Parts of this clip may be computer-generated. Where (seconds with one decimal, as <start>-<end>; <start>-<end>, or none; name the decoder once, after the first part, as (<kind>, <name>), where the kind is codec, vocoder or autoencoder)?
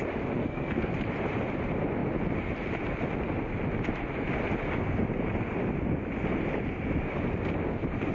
0.4-0.9 (codec, SNAC)